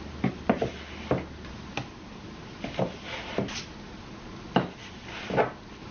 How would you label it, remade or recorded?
recorded